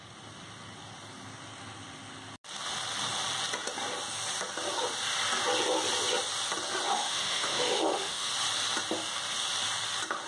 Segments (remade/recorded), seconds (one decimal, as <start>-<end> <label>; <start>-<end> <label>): 0.0-6.9 recorded; 6.9-8.3 remade; 8.3-10.3 recorded